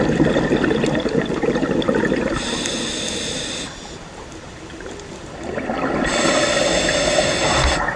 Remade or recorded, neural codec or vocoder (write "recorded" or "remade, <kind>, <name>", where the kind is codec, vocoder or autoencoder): recorded